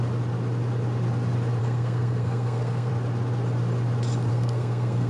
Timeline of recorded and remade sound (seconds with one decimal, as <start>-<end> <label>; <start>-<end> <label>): 0.0-1.6 recorded; 1.6-2.9 remade; 2.9-4.3 recorded; 4.3-5.1 remade